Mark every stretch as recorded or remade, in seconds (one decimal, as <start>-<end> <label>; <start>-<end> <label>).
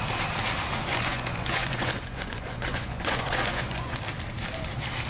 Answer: 0.0-0.9 recorded; 0.9-4.0 remade; 4.0-5.1 recorded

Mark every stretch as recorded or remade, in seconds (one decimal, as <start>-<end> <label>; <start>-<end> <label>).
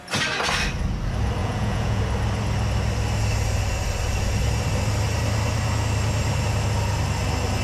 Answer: 0.0-1.4 recorded; 1.4-2.0 remade; 2.0-7.6 recorded